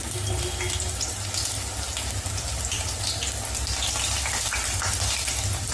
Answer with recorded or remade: recorded